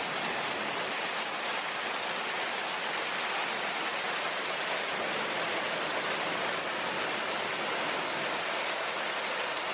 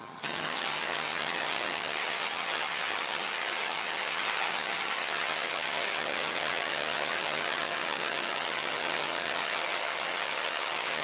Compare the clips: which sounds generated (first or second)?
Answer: second